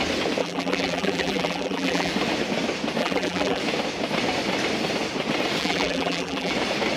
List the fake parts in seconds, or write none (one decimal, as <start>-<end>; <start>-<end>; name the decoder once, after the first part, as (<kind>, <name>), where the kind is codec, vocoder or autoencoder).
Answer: 0.4-2.1 (vocoder, BigVGAN v2); 3.0-3.6; 5.6-6.5